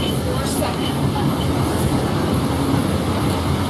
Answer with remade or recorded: recorded